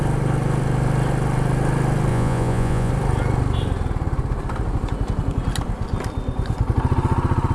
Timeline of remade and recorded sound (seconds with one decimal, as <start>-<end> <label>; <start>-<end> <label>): 0.0-2.1 recorded; 2.1-2.9 remade; 2.9-7.5 recorded